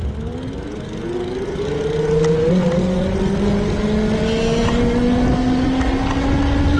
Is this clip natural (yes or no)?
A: yes